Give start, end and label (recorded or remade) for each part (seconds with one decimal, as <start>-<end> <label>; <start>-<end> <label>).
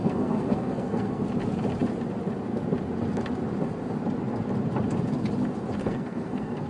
0.0-1.2 remade; 1.2-5.8 recorded; 5.8-6.7 remade